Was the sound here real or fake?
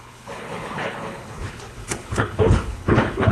fake